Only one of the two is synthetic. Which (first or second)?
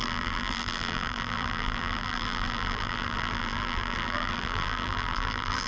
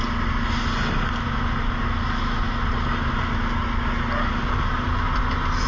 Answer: first